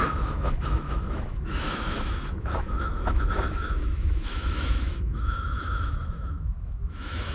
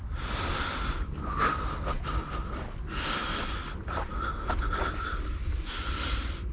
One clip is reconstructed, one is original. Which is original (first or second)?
second